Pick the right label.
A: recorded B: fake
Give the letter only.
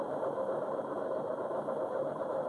B